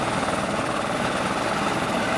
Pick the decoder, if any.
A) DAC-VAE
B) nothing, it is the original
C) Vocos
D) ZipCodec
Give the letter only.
B